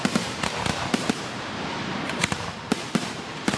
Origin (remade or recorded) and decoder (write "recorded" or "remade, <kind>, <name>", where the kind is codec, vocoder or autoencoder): remade, vocoder, BigVGAN v2